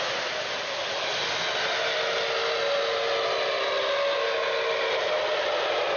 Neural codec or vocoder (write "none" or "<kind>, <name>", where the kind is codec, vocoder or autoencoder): none